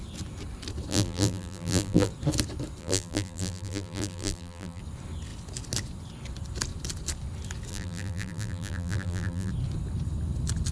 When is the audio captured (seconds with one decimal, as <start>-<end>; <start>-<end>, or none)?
0.0-0.9; 2.1-2.8; 4.8-7.7; 9.5-10.7